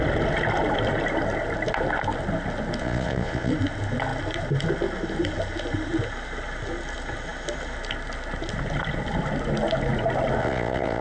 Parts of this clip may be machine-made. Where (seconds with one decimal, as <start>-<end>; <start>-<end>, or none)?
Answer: 2.8-3.5; 10.4-11.0